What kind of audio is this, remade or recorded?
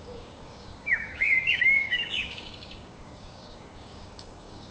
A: remade